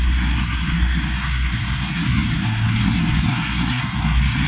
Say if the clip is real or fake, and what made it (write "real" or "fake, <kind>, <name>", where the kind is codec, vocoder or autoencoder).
fake, codec, SNAC